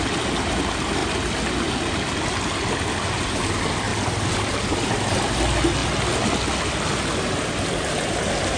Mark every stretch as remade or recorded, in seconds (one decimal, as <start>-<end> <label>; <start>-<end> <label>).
0.0-8.6 recorded